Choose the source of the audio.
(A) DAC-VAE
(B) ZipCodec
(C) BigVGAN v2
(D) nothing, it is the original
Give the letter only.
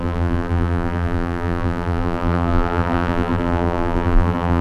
C